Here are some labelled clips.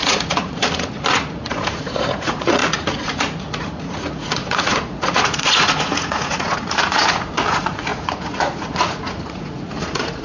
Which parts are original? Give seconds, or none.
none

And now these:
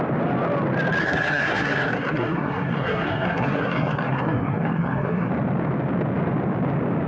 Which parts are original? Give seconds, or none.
0.0-1.0; 5.3-7.1

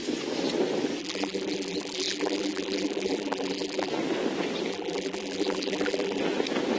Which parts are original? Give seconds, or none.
0.0-1.0; 3.9-4.7; 6.2-6.8